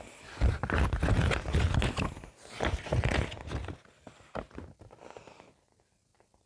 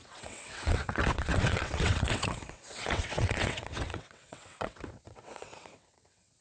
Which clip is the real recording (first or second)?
first